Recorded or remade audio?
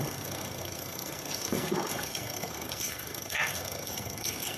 remade